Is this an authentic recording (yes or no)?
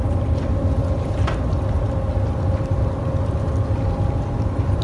yes